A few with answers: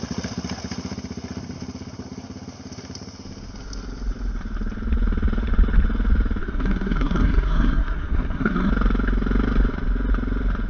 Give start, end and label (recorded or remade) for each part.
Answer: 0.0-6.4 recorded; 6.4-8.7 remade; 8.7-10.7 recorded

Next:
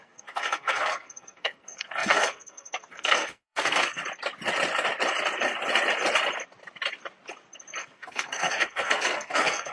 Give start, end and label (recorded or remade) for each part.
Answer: 0.0-4.0 remade; 4.0-7.8 recorded; 7.8-9.7 remade

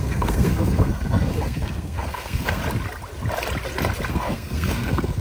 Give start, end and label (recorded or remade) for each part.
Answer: 0.0-2.6 remade; 2.6-4.1 recorded; 4.1-5.2 remade